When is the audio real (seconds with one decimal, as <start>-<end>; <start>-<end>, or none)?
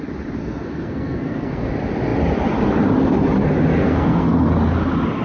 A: 0.0-0.4; 1.7-3.8; 4.5-5.2